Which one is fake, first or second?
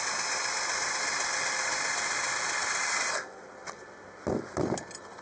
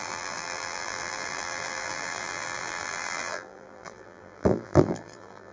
second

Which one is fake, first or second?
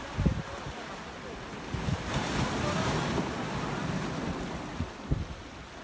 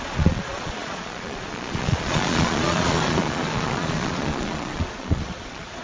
second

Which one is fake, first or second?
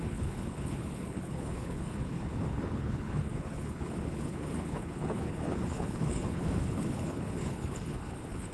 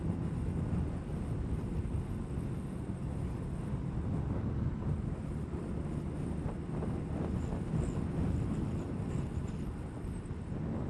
first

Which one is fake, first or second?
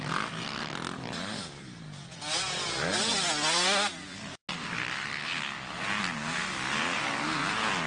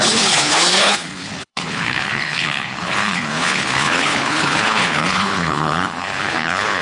second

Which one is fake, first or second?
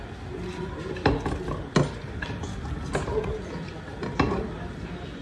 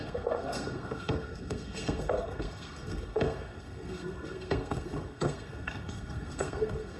second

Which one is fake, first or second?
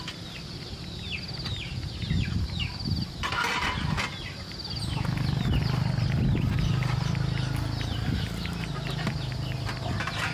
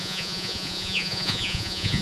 second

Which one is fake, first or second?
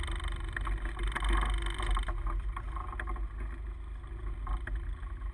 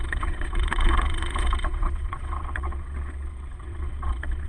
second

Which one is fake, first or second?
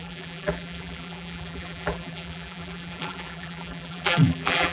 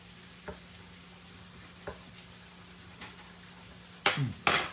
first